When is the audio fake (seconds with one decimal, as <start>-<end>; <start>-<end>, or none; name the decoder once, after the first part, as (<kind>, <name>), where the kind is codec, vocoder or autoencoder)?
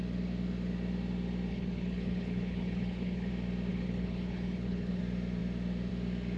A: 1.5-3.3 (codec, HILCodec); 3.7-5.0